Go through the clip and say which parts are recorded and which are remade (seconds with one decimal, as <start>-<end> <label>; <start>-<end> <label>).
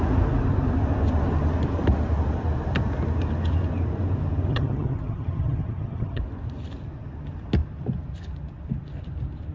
0.0-4.5 recorded; 4.5-6.2 remade; 6.2-9.5 recorded